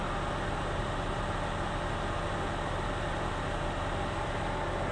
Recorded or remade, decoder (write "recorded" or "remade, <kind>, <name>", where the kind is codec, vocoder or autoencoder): recorded